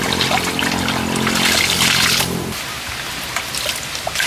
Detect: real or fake real